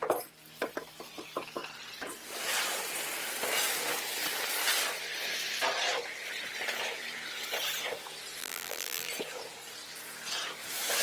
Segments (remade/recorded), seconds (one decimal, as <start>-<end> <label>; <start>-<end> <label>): 0.0-8.4 recorded; 8.4-9.1 remade; 9.1-11.0 recorded